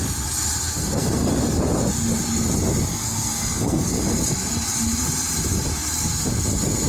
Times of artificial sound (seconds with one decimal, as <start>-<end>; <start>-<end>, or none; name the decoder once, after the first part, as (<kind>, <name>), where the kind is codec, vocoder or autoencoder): 0.7-1.3 (codec, SNAC); 2.9-4.0